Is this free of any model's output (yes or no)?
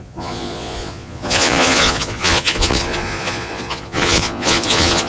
no